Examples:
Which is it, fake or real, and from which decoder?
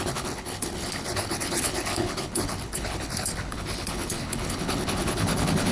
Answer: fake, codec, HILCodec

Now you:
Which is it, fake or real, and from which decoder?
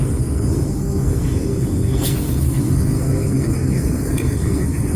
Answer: fake, codec, SNAC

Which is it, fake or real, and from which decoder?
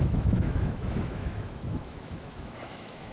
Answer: fake, autoencoder, DAC-VAE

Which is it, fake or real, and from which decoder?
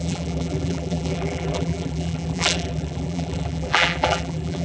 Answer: fake, vocoder, BigVGAN v2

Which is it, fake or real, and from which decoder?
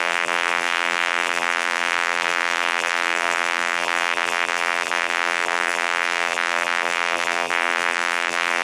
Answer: fake, vocoder, BigVGAN v2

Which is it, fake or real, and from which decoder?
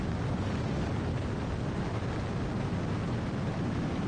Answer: real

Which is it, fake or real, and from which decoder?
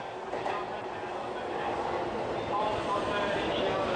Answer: real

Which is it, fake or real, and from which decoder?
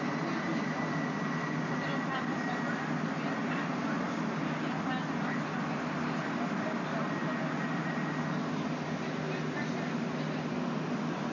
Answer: real